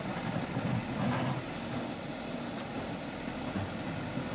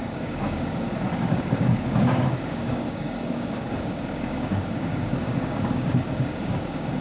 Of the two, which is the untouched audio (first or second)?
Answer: first